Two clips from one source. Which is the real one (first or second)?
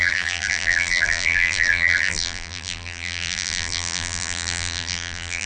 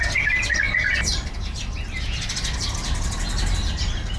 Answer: second